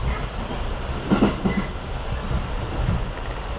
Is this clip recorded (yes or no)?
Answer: yes